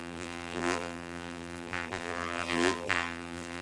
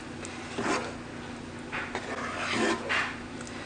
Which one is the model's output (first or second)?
first